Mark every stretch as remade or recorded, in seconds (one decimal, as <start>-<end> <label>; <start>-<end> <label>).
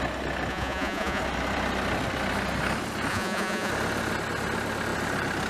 0.0-0.5 recorded; 0.5-1.2 remade; 1.2-3.1 recorded; 3.1-3.7 remade; 3.7-5.5 recorded